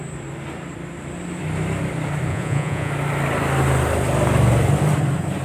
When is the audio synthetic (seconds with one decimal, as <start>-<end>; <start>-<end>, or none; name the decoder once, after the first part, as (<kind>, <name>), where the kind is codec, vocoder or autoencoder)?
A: 2.3-2.9 (vocoder, Vocos)